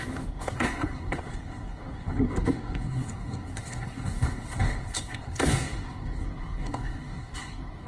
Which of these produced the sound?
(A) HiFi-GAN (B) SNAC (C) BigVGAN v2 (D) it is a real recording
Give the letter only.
B